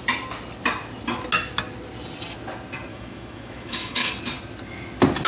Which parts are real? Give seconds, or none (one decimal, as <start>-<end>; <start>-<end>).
0.0-2.9; 4.1-5.3